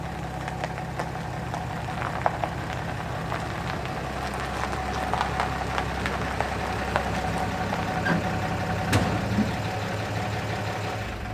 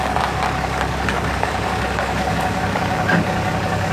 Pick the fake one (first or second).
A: second